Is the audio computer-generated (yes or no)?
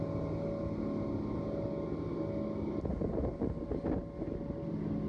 no